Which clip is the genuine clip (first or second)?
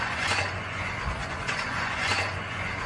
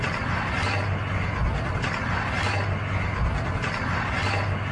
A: second